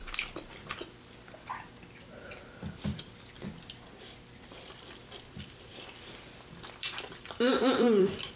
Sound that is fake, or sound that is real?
fake